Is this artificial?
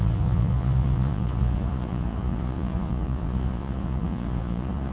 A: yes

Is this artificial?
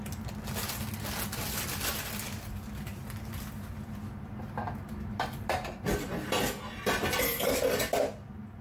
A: no